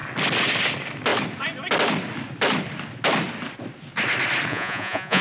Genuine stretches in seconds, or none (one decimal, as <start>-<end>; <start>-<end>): 0.0-4.5